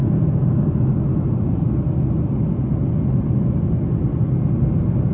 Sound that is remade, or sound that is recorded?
recorded